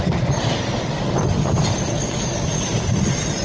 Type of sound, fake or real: real